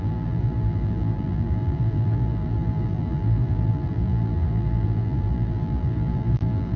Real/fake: fake